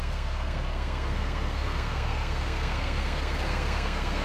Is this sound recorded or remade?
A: remade